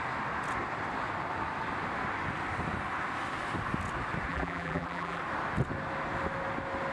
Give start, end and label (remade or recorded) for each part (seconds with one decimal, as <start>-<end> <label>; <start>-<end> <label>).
0.0-4.3 recorded; 4.3-5.2 remade; 5.2-6.9 recorded